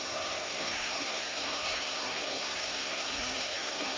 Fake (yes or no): yes